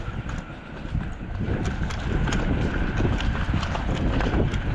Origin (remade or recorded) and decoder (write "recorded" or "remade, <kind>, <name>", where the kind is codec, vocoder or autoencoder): recorded